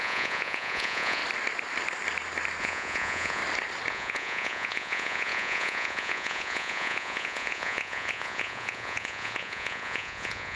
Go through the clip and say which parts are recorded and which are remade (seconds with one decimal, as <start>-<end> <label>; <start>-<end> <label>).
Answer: 0.0-1.2 remade; 1.2-2.6 recorded; 2.6-3.4 remade; 3.4-3.9 recorded; 3.9-10.6 remade